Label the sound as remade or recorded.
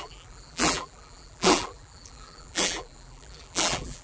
remade